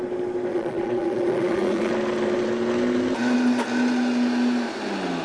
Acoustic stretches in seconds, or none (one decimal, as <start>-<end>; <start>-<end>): 0.0-0.5; 1.9-5.2